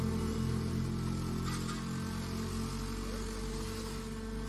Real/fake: real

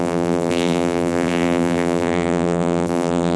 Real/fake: fake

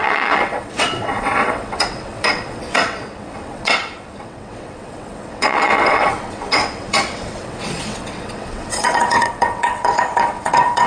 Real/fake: fake